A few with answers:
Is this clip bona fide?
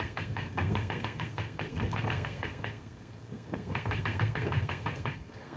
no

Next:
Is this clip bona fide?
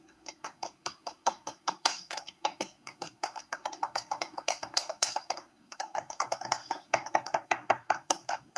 no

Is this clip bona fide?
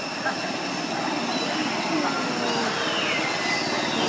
yes